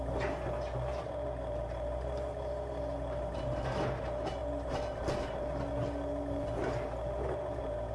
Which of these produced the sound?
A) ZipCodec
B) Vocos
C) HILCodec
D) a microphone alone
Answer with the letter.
D